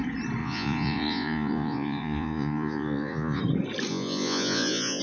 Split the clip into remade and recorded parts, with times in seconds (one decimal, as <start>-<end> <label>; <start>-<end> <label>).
0.0-0.4 recorded; 0.4-3.4 remade; 3.4-3.9 recorded; 3.9-5.0 remade